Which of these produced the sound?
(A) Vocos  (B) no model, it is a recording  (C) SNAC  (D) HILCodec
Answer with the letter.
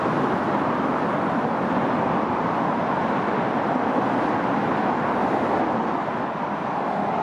B